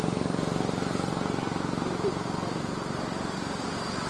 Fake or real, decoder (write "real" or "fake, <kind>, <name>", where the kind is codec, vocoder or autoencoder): real